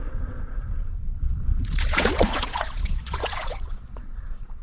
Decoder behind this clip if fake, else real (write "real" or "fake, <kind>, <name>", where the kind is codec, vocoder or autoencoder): fake, vocoder, Vocos